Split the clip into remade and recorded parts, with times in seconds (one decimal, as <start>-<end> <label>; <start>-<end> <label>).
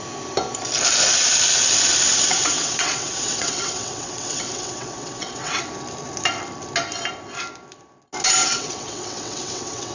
0.0-2.1 recorded; 2.1-5.6 remade; 5.6-8.4 recorded; 8.4-9.9 remade